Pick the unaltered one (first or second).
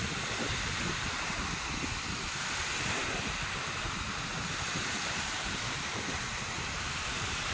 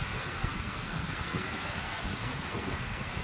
first